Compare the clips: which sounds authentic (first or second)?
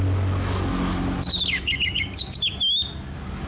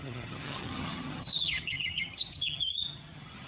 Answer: first